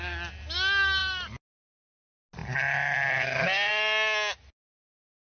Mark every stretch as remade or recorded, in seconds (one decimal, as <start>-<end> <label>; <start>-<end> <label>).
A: 0.0-5.4 recorded